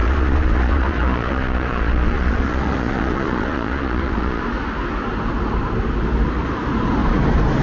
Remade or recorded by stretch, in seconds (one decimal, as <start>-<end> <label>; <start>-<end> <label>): 0.0-4.4 remade; 4.4-7.6 recorded